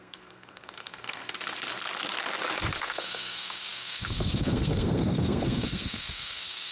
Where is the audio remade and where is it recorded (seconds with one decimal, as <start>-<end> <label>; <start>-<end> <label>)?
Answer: 0.0-1.2 remade; 1.2-2.8 recorded; 2.8-6.7 remade